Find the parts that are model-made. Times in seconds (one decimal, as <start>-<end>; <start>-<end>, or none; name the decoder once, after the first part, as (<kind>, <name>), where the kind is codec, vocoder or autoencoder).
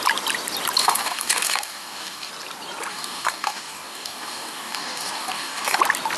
0.8-2.3 (codec, DAC); 2.9-5.8